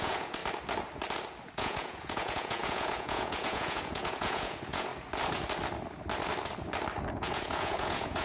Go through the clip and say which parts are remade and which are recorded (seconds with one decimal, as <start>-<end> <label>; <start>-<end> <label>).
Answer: 0.0-0.4 remade; 0.4-1.4 recorded; 1.4-4.9 remade; 4.9-7.1 recorded; 7.1-8.2 remade